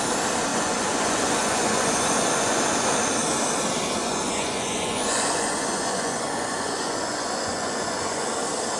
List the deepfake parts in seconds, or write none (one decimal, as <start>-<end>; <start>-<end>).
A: 0.5-2.6; 4.0-8.3